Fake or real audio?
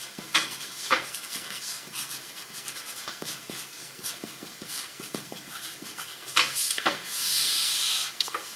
fake